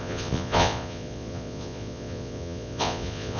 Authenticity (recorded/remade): remade